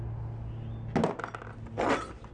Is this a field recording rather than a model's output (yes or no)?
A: yes